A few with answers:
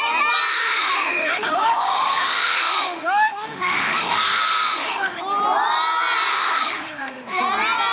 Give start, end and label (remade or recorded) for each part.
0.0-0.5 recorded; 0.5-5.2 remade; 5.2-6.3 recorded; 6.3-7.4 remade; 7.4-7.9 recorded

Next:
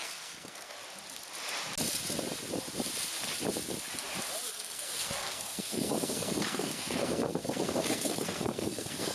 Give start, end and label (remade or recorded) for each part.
0.0-0.8 remade; 0.8-4.5 recorded; 4.5-9.1 remade